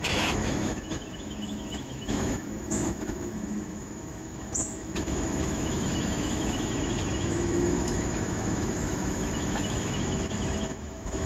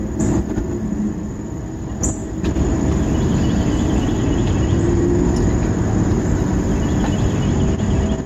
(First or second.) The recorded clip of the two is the second